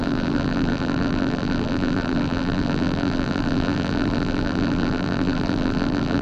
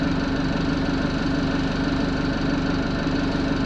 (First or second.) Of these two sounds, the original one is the second